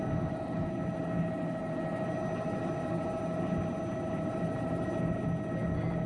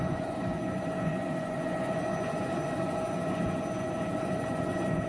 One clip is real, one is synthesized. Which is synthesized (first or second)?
second